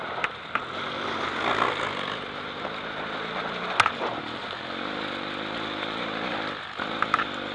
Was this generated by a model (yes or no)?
no